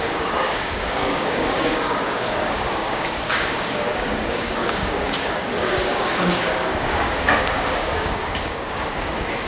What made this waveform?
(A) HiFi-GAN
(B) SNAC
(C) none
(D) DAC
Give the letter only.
D